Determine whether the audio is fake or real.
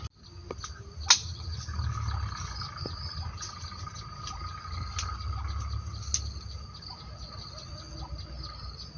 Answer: real